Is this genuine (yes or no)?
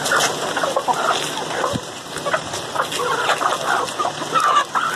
yes